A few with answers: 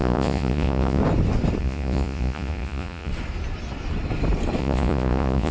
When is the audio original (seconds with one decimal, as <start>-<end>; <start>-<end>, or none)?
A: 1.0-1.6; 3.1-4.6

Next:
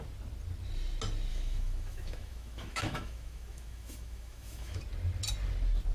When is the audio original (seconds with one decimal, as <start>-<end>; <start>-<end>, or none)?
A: 0.0-1.3; 4.8-5.9

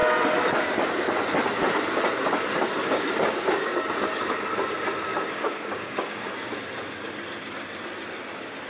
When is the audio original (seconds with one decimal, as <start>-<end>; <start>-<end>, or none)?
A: 0.0-2.8; 3.8-5.1; 6.6-8.7

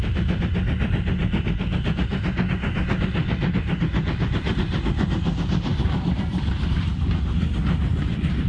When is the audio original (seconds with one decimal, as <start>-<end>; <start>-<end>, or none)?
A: 0.0-5.7; 6.9-8.5